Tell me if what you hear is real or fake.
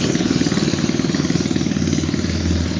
real